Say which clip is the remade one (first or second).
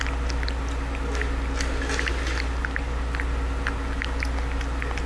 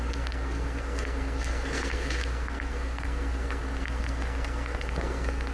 second